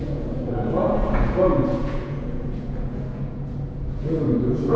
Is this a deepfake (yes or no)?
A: yes